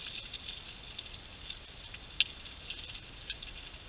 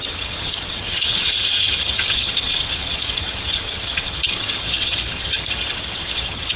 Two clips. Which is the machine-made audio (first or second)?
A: second